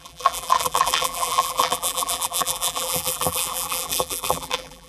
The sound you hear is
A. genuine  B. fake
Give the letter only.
B